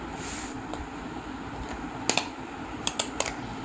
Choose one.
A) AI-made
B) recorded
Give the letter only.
B